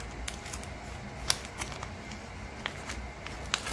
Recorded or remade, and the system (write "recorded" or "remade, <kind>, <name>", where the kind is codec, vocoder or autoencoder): recorded